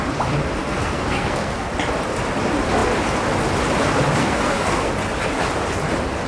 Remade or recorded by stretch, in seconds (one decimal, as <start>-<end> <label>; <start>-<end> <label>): 0.0-0.6 recorded; 0.6-1.7 remade; 1.7-4.2 recorded; 4.2-4.9 remade; 4.9-6.3 recorded